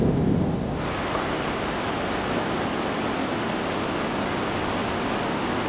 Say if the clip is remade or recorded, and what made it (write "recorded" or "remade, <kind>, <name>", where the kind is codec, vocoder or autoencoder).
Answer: recorded